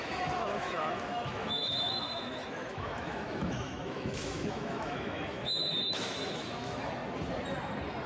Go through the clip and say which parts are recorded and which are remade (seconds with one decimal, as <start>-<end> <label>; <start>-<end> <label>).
0.0-7.0 remade; 7.0-8.1 recorded